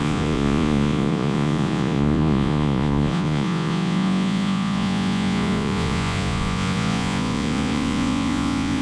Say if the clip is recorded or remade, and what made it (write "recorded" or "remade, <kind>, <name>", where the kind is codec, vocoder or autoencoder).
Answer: remade, vocoder, Vocos